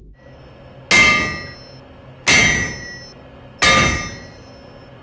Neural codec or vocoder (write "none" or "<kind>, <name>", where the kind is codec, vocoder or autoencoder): none